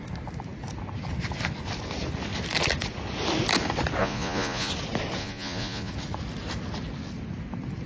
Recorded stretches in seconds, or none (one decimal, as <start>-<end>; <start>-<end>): 0.0-4.0; 4.7-5.2; 5.9-7.9